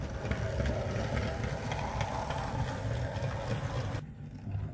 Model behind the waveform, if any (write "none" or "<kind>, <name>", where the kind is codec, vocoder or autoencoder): none